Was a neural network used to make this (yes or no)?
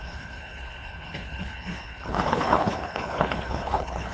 yes